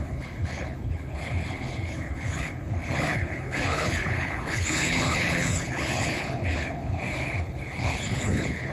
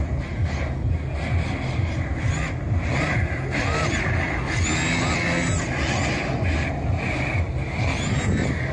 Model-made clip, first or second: first